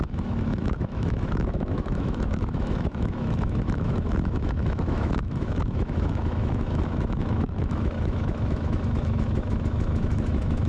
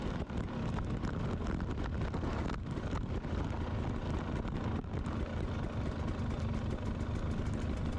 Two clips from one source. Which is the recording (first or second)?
second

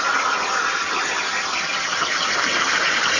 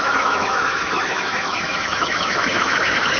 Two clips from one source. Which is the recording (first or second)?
first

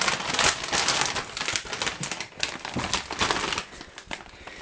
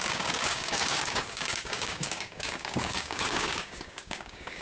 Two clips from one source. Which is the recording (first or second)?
first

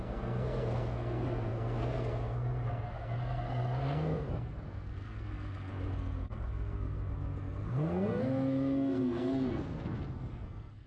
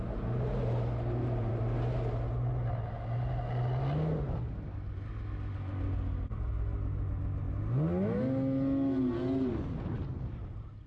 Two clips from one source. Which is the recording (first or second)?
second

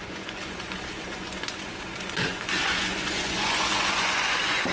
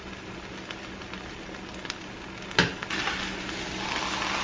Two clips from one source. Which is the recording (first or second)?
second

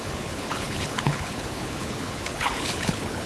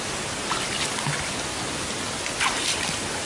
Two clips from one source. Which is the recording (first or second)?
second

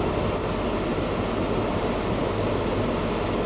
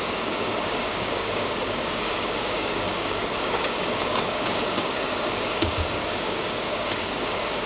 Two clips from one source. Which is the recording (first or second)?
first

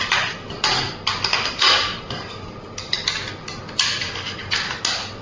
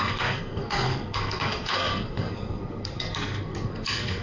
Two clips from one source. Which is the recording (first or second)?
first